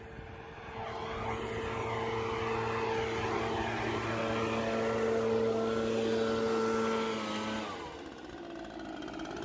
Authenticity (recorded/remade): recorded